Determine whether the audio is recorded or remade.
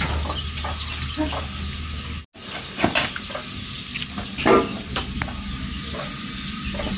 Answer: recorded